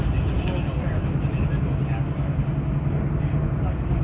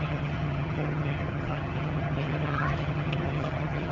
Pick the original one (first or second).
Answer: first